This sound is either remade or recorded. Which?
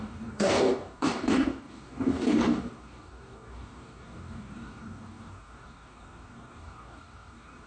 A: remade